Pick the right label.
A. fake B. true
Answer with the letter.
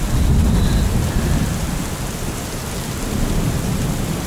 B